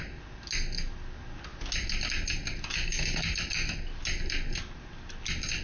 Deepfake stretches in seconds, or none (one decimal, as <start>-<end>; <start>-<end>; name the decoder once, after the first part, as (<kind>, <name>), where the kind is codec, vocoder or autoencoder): none